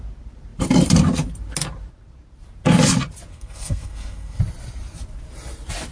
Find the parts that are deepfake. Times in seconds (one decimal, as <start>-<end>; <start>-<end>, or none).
3.3-4.4